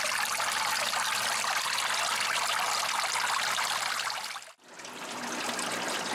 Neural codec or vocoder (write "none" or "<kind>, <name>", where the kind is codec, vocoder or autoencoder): none